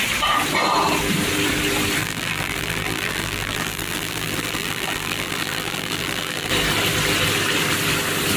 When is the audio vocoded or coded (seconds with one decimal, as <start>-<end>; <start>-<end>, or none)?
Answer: 2.0-6.5